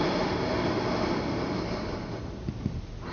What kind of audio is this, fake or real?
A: real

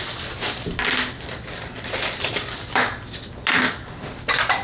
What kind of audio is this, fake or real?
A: real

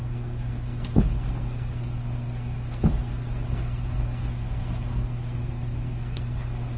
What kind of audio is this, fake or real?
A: fake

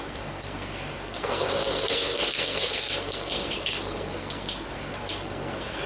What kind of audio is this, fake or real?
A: fake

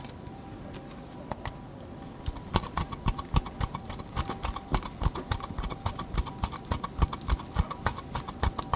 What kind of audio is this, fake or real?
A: real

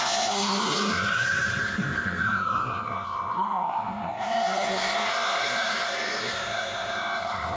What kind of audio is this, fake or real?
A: fake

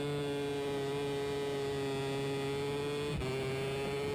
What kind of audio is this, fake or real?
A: real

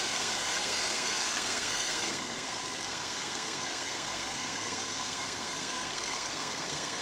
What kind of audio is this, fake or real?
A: fake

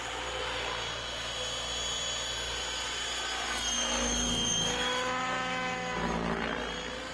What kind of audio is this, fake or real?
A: real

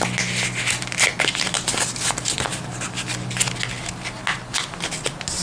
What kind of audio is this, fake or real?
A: real